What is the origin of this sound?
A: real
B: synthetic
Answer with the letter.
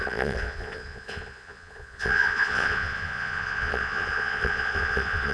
B